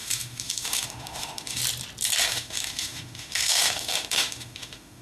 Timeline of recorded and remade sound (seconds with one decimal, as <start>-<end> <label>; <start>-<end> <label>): 0.0-1.6 remade; 1.6-2.2 recorded; 2.2-5.0 remade